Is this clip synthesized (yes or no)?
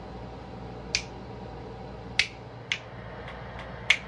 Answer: no